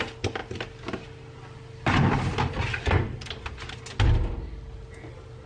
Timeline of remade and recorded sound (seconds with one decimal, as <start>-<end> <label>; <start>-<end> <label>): 0.0-0.4 recorded; 0.4-3.7 remade; 3.7-5.5 recorded